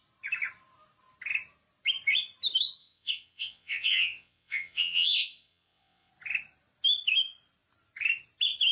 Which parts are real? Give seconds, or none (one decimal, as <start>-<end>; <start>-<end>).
0.0-2.8; 6.1-8.7